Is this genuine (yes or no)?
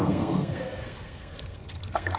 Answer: no